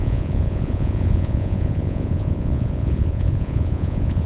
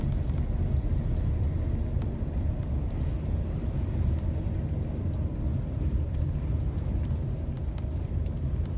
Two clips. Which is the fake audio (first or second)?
first